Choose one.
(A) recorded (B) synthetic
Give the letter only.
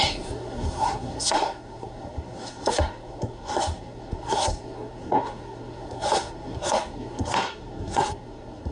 B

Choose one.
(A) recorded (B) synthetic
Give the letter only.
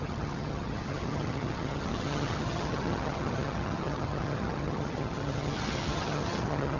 B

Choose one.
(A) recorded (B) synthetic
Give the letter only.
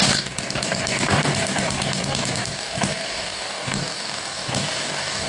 B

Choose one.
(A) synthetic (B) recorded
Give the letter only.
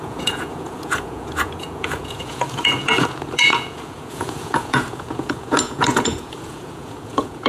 A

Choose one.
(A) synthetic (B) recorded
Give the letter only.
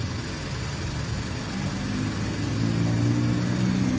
B